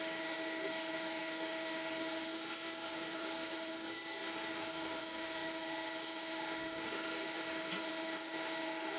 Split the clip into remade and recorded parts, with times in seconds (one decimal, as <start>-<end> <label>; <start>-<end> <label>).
0.0-9.0 remade